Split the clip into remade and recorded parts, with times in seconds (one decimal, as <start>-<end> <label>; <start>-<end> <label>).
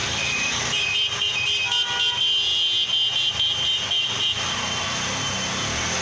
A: 0.0-6.0 recorded